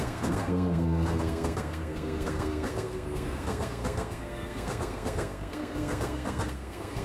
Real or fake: fake